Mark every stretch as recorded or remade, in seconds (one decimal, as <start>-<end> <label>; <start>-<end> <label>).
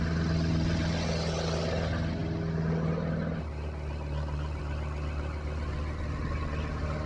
0.0-7.1 recorded